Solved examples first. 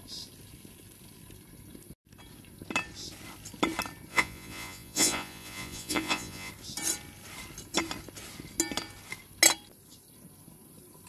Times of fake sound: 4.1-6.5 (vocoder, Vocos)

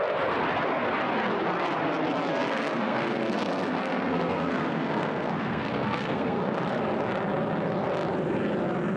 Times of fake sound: 2.3-6.6 (codec, SNAC)

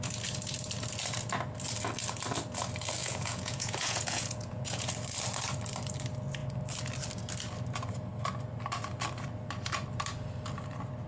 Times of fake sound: 3.0-4.9 (vocoder, Vocos)

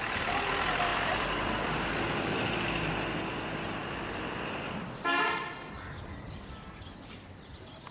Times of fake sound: 0.9-2.9 (vocoder, BigVGAN v2); 3.8-7.9